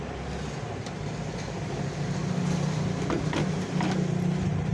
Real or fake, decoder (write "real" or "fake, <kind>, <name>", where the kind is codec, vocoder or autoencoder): real